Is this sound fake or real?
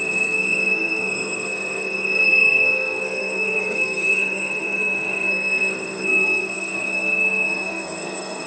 fake